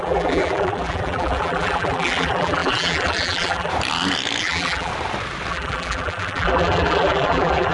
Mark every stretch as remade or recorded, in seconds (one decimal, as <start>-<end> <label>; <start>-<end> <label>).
0.0-3.7 remade; 3.7-4.4 recorded; 4.4-4.9 remade; 4.9-5.5 recorded; 5.5-7.7 remade